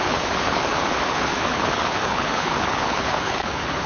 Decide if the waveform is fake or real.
fake